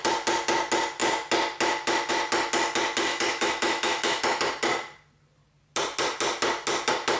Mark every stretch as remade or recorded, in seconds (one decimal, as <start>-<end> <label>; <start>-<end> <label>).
0.0-3.1 recorded; 3.1-4.4 remade; 4.4-7.2 recorded